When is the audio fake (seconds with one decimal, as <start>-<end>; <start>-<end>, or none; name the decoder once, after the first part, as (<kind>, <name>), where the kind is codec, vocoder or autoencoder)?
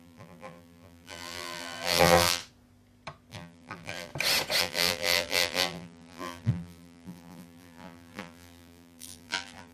0.0-2.4 (vocoder, BigVGAN v2); 3.3-4.1; 4.6-9.7